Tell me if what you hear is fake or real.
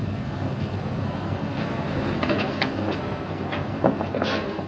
fake